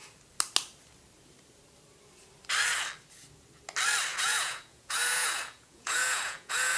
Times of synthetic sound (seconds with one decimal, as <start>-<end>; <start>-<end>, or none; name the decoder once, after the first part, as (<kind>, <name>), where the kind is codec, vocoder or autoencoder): 4.1-6.8 (vocoder, Vocos)